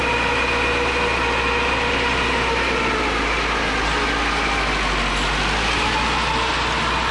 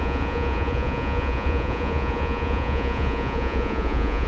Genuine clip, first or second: first